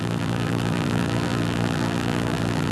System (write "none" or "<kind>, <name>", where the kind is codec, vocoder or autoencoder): vocoder, BigVGAN v2